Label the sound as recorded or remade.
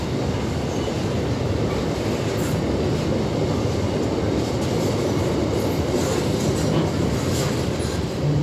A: recorded